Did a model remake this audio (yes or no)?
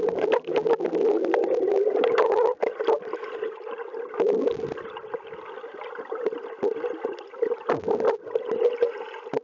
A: no